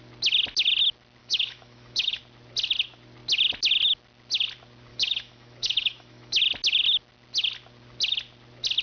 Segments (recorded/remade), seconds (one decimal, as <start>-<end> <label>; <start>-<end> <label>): 0.0-1.2 recorded; 1.2-2.2 remade; 2.2-4.9 recorded; 4.9-6.4 remade; 6.4-8.8 recorded